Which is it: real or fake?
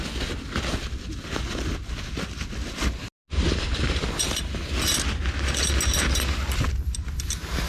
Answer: real